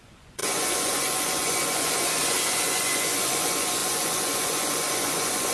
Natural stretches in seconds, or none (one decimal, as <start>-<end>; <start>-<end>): none